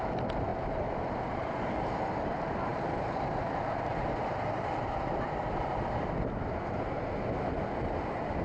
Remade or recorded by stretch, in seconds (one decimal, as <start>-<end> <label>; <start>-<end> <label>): 0.0-8.4 recorded